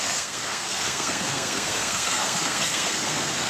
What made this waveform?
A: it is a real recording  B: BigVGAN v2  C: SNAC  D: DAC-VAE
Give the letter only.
C